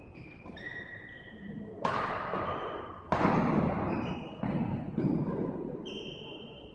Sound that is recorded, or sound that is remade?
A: remade